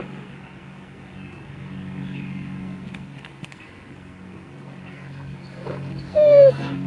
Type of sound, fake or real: fake